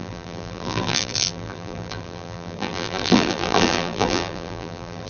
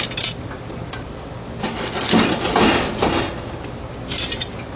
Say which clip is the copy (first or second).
first